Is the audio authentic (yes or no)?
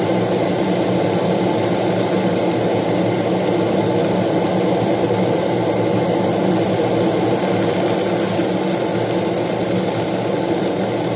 yes